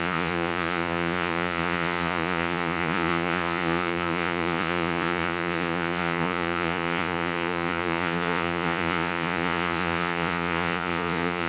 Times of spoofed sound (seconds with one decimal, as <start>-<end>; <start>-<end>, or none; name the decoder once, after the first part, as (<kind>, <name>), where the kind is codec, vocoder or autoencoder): 0.0-11.5 (vocoder, Vocos)